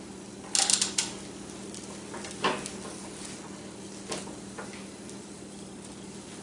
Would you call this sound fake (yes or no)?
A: no